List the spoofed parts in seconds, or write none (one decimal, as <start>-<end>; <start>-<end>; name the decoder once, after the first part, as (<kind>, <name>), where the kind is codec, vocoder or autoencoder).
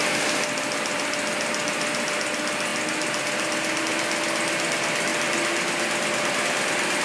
none